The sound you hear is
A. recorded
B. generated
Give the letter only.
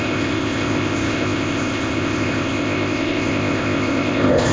B